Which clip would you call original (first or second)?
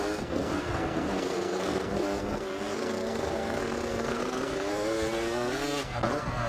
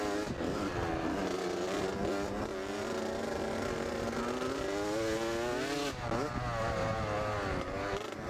second